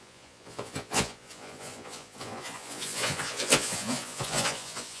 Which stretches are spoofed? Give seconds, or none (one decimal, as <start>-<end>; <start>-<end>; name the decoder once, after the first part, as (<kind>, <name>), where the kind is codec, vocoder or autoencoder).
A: 0.0-5.0 (vocoder, Vocos)